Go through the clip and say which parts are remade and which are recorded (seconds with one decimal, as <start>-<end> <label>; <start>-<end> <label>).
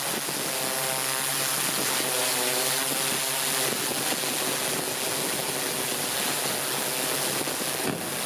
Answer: 0.0-8.3 recorded